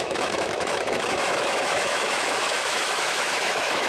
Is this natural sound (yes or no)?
no